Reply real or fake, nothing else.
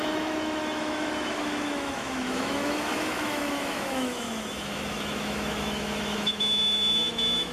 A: fake